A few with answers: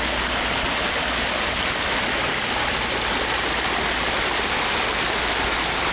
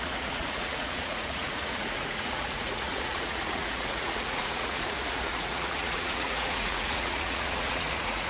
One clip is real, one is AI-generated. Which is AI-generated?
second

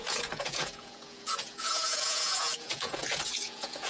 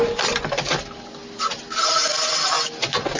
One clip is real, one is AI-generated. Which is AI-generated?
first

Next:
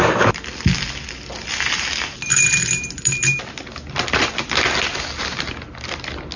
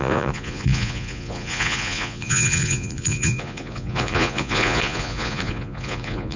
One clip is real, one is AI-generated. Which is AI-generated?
second